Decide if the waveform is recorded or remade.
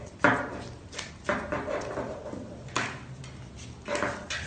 recorded